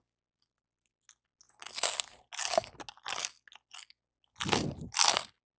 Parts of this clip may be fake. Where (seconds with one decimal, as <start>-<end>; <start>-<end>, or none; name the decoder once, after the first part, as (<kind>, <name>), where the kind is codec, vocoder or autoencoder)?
none